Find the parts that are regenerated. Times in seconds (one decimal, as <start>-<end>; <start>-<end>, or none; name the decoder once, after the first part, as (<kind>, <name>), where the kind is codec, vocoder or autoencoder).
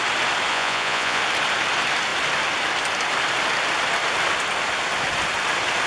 0.5-1.2 (vocoder, Vocos)